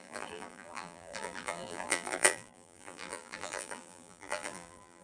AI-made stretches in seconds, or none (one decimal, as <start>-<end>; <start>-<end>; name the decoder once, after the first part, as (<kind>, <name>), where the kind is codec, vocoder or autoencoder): 0.0-5.0 (vocoder, BigVGAN v2)